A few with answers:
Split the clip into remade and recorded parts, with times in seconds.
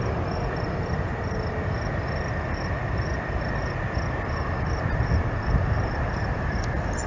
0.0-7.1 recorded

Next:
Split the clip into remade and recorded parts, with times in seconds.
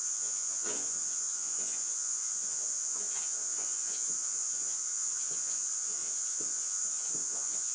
0.0-7.7 remade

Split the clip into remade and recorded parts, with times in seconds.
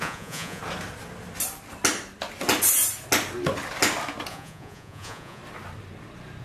0.0-0.6 remade; 0.6-4.3 recorded; 4.3-5.4 remade; 5.4-6.4 recorded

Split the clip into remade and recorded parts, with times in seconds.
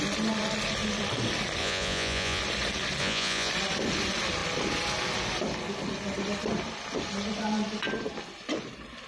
0.0-1.6 recorded; 1.6-2.4 remade; 2.4-3.0 recorded; 3.0-3.5 remade; 3.5-9.1 recorded